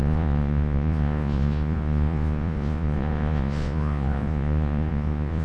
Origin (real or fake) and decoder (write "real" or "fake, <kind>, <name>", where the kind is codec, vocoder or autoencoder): fake, vocoder, Vocos